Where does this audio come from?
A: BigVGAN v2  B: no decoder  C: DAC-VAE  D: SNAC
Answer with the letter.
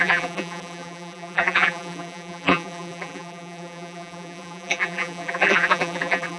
A